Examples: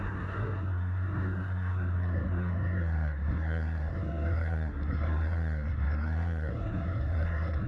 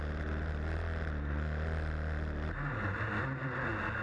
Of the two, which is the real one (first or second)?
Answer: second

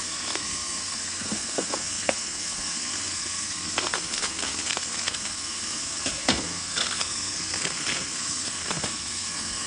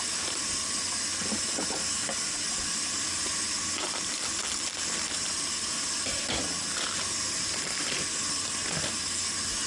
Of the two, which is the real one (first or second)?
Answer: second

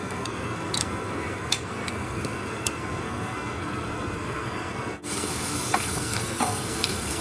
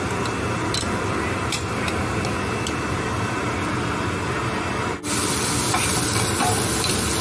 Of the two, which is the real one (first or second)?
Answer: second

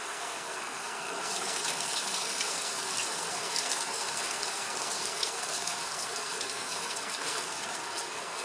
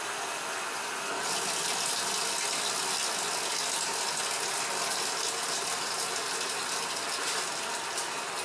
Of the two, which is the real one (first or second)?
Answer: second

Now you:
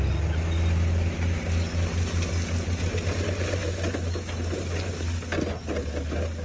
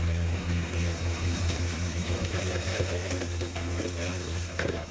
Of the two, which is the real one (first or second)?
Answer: first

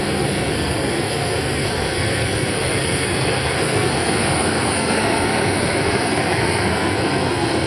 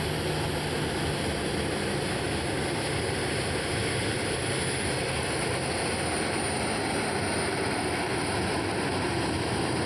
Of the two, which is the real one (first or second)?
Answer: second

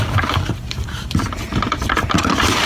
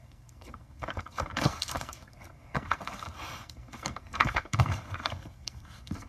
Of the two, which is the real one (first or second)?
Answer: first